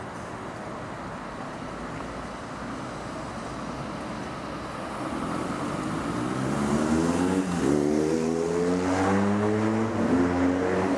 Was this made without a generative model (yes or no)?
yes